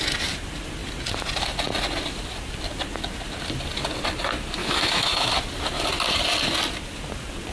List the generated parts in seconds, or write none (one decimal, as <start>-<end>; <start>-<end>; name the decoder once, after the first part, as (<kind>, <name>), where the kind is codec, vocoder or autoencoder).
4.6-5.3 (autoencoder, DAC-VAE)